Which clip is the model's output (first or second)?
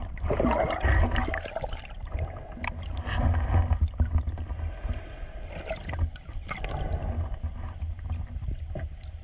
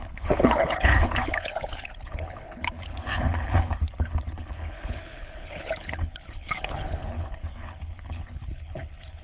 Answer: second